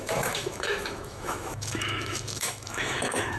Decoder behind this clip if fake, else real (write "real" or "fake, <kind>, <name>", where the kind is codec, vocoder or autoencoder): fake, autoencoder, DAC-VAE